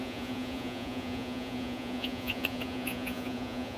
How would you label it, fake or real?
fake